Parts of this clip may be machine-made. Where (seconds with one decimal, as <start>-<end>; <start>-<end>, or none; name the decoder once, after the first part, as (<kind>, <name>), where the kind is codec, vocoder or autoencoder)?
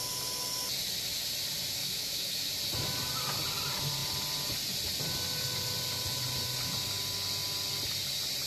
1.8-2.5 (autoencoder, DAC-VAE)